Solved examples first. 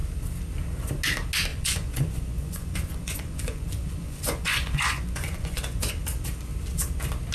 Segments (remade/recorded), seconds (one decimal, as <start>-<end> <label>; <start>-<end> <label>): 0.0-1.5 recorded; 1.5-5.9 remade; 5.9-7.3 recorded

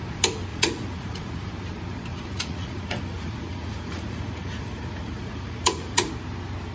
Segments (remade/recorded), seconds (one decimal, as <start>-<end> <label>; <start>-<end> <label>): 0.0-0.5 recorded; 0.5-1.5 remade; 1.5-2.1 recorded; 2.1-6.1 remade; 6.1-6.7 recorded

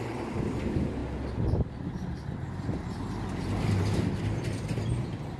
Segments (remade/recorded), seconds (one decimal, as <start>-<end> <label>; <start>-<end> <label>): 0.0-1.0 remade; 1.0-4.2 recorded; 4.2-5.4 remade